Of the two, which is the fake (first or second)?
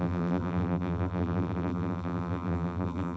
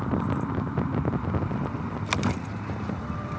first